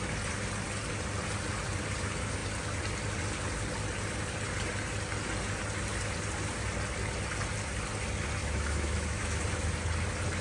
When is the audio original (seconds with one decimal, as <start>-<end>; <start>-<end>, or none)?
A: 0.0-8.4; 9.4-10.4